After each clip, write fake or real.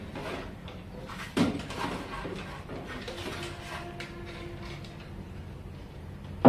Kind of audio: real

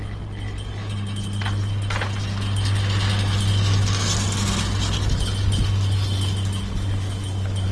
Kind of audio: real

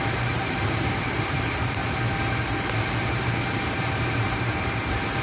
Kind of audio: fake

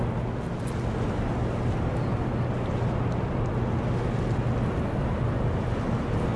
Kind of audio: real